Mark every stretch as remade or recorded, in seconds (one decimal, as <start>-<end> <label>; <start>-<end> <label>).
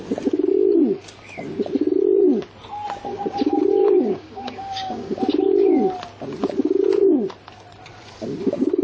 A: 0.0-3.8 recorded; 3.8-5.2 remade; 5.2-8.8 recorded